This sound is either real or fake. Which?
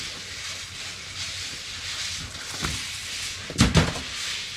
real